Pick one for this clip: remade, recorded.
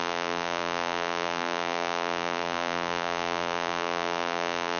remade